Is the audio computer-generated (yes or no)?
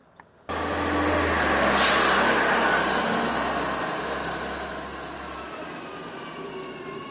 no